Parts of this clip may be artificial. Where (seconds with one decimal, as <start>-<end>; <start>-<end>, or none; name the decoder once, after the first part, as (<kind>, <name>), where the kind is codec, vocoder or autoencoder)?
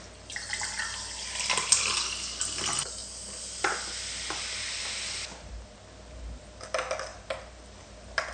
none